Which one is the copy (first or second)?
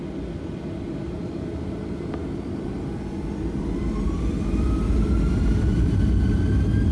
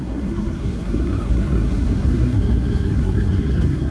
second